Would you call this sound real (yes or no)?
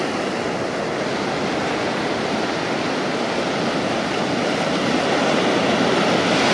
yes